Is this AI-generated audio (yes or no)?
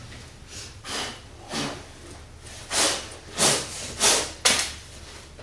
no